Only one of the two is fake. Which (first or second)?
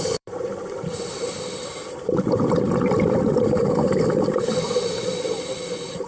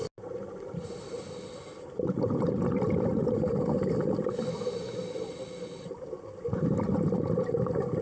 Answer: first